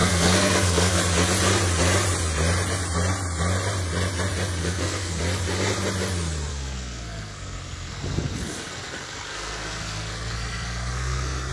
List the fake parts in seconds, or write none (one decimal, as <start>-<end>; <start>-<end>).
0.0-1.0; 4.6-5.2; 6.5-11.5